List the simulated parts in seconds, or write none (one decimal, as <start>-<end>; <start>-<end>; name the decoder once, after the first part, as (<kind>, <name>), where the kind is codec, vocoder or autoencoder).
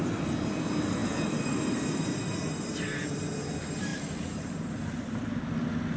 1.0-2.2 (vocoder, BigVGAN v2); 3.9-5.4